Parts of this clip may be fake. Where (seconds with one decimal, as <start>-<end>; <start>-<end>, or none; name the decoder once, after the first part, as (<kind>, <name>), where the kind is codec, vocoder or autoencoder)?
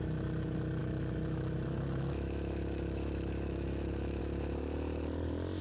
0.8-4.2 (autoencoder, DAC-VAE)